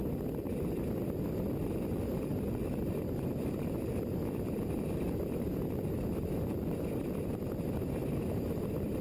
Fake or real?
fake